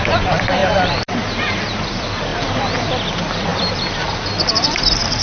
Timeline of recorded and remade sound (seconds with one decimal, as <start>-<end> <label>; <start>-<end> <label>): 0.0-0.6 remade; 0.6-1.4 recorded; 1.4-5.2 remade